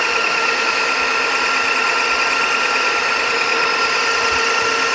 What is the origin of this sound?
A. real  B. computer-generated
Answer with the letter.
A